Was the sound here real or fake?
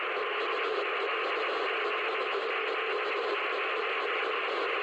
real